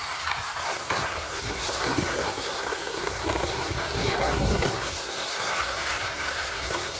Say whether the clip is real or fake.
fake